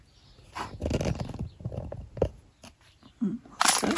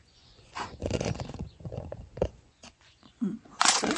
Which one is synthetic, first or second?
second